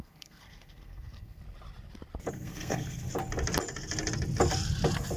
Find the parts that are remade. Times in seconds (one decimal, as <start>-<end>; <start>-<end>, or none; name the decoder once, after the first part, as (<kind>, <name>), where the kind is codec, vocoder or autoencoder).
0.0-1.4 (codec, SNAC); 2.3-3.1